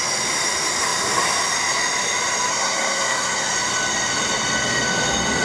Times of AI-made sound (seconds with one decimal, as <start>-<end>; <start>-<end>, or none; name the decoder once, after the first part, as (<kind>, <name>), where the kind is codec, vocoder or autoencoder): 2.5-3.5 (codec, SNAC)